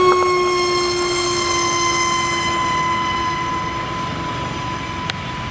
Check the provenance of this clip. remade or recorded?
recorded